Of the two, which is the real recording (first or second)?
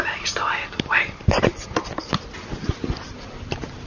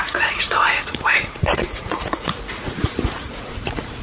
first